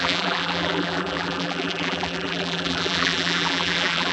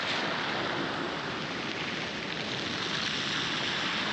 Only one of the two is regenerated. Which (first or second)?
first